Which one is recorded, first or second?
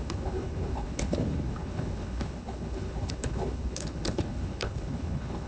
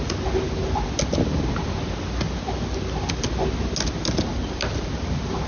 second